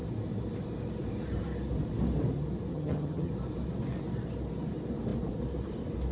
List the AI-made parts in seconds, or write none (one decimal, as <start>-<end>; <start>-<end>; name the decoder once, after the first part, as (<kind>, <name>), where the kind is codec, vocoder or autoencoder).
2.7-3.3 (vocoder, HiFi-GAN)